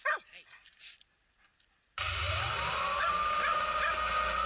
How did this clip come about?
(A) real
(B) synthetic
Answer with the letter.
A